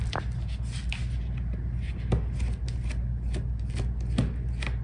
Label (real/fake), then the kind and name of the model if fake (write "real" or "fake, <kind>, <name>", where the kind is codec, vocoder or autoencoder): real